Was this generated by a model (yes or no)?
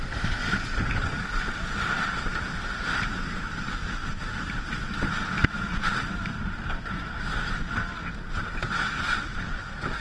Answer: no